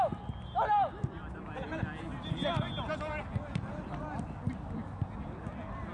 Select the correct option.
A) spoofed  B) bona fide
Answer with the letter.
B